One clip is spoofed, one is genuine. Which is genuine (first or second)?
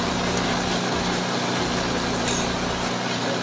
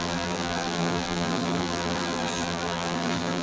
first